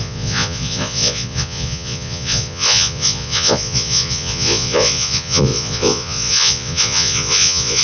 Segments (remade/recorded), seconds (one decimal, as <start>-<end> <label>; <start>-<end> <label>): 0.0-7.8 remade